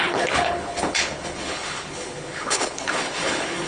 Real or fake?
fake